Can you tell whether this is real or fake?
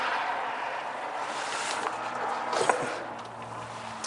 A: real